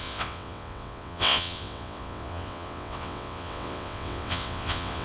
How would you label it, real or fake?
fake